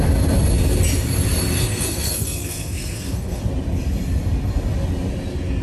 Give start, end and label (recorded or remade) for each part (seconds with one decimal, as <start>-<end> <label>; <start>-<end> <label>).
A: 0.0-1.5 recorded; 1.5-3.4 remade; 3.4-5.6 recorded